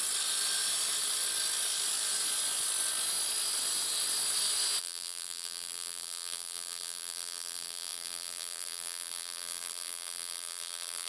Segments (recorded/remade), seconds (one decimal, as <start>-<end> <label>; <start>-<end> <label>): 0.0-4.8 recorded; 4.8-11.1 remade